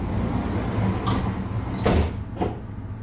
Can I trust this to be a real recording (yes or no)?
yes